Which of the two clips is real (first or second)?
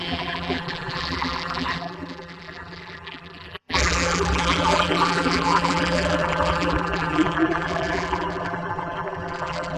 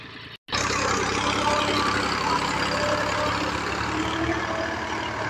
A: second